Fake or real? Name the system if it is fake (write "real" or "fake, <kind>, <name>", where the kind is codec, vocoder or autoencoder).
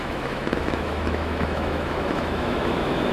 fake, autoencoder, DAC-VAE